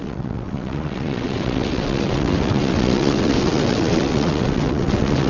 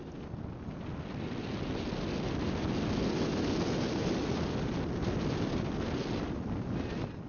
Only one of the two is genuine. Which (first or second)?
second